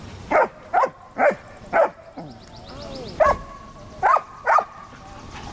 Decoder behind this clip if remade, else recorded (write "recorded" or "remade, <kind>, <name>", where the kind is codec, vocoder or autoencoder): recorded